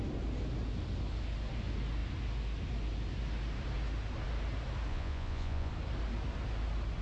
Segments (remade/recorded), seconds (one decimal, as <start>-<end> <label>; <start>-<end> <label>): 0.0-4.9 recorded; 4.9-5.7 remade; 5.7-7.0 recorded